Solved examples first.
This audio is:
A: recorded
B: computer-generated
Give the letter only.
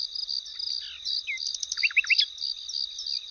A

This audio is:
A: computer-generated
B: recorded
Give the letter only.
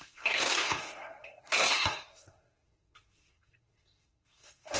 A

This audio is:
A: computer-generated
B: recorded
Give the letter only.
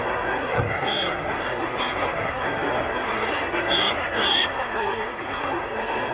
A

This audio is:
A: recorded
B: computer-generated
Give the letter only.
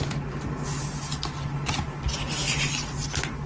A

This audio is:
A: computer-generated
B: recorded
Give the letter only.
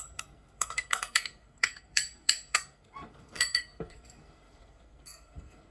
A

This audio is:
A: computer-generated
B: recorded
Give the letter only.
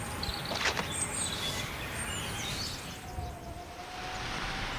B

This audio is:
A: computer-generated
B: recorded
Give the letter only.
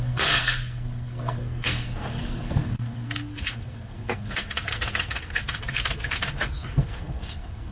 A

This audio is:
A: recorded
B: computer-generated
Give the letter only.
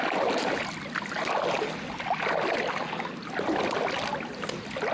A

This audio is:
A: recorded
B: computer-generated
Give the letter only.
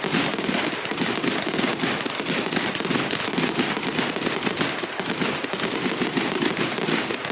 A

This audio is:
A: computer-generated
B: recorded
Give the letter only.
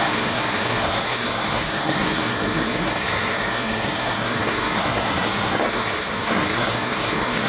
A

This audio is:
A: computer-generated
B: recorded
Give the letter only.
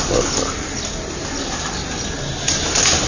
B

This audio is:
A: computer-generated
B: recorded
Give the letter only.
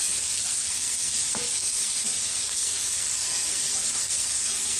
A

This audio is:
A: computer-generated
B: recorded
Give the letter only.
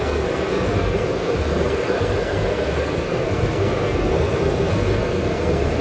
A